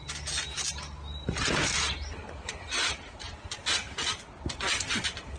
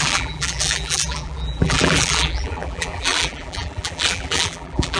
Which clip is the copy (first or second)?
second